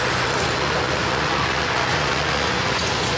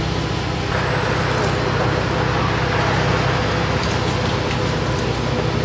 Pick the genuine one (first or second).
second